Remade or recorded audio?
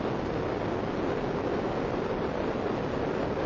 recorded